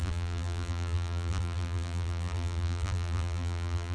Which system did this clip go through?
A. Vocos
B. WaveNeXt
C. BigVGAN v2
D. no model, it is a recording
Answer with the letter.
C